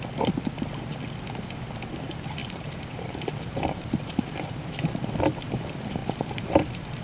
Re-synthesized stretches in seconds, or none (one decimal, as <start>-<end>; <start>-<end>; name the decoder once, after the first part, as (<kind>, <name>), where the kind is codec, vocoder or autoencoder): 2.4-5.2 (vocoder, BigVGAN v2); 6.0-7.0